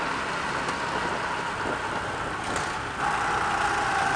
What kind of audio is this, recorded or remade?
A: recorded